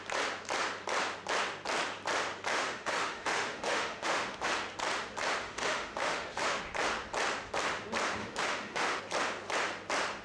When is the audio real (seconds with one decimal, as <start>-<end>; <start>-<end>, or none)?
0.0-2.5; 4.5-5.4; 6.6-8.2; 9.0-10.2